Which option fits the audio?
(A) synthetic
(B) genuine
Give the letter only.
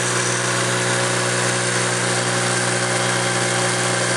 B